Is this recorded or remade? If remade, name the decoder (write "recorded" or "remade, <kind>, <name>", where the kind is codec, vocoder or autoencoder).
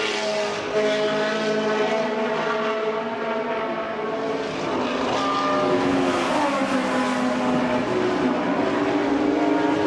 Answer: recorded